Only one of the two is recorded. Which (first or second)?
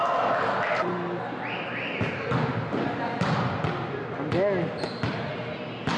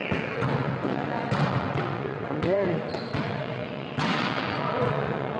first